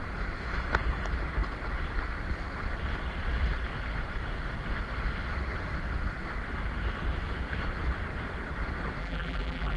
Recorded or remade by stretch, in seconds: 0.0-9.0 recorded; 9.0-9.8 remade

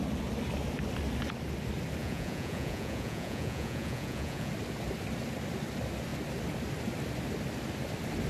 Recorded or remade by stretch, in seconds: 0.0-2.0 recorded; 2.0-4.5 remade; 4.5-8.3 recorded

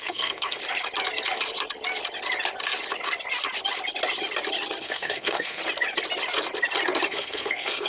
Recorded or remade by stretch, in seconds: 0.0-0.6 remade; 0.6-4.8 recorded; 4.8-5.6 remade; 5.6-7.1 recorded; 7.1-7.9 remade

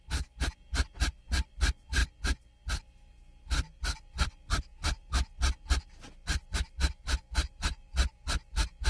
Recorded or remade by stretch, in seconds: 0.0-8.9 recorded

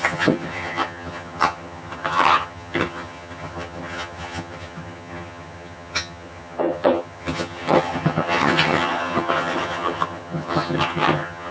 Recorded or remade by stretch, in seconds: 0.0-11.5 remade

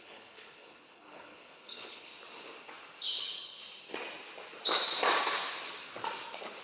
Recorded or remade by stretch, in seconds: 0.0-2.1 remade; 2.1-3.2 recorded; 3.2-3.6 remade; 3.6-6.6 recorded